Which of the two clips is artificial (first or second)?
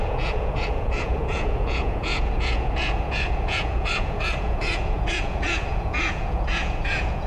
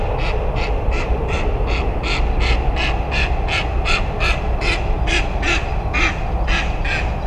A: first